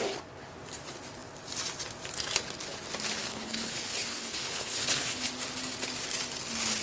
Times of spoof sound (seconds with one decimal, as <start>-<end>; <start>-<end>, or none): 3.3-5.3